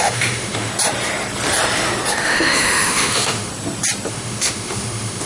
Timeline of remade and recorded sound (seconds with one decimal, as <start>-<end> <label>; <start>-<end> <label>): 0.0-0.7 remade; 0.7-2.1 recorded; 2.1-3.5 remade; 3.5-4.1 recorded; 4.1-5.3 remade